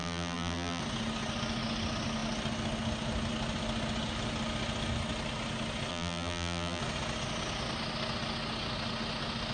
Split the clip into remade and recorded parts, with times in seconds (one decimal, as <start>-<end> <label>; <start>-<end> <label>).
0.0-0.8 remade; 0.8-5.9 recorded; 5.9-6.8 remade; 6.8-9.5 recorded